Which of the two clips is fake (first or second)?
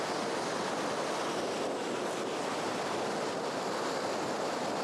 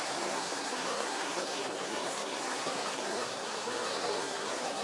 second